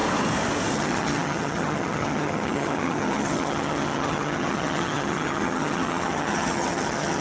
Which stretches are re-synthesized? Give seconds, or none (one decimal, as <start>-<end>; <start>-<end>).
0.7-7.2